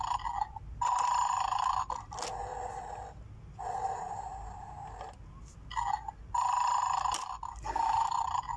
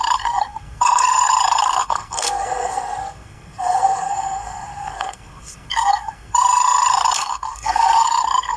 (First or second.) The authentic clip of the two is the first